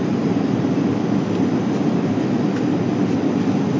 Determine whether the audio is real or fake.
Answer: real